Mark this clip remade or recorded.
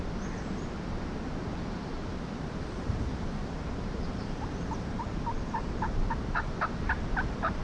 remade